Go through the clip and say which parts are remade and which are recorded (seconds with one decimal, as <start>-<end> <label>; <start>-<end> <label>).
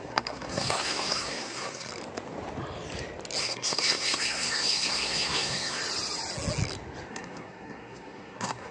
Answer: 0.0-1.9 remade; 1.9-3.4 recorded; 3.4-5.8 remade; 5.8-7.1 recorded; 7.1-8.7 remade